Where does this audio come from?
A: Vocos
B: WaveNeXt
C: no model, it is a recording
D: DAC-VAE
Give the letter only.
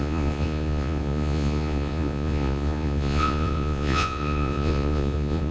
A